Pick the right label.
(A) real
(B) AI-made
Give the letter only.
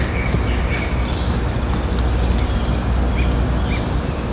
A